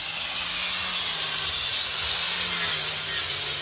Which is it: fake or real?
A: real